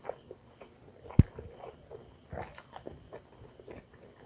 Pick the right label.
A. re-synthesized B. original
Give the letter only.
B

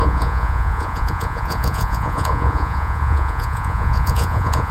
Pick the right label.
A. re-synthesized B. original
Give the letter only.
A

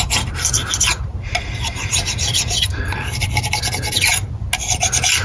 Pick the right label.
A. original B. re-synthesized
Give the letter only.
A